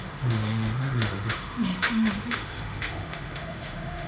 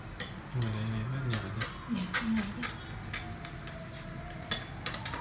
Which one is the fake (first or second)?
first